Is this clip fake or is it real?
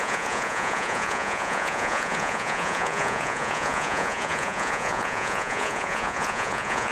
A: fake